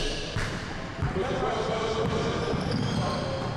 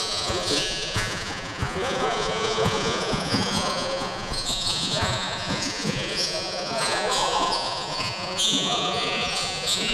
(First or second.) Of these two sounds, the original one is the first